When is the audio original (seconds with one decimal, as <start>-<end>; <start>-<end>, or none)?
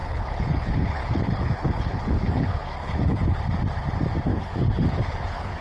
3.4-4.3